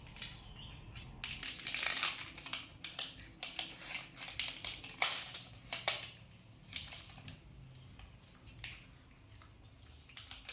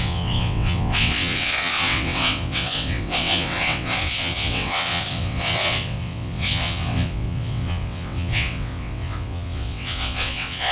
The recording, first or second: first